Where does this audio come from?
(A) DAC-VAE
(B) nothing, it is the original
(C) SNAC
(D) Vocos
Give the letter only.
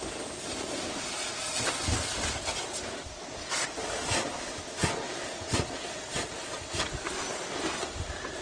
B